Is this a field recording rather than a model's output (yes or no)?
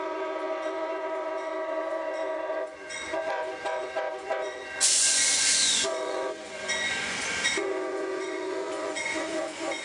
no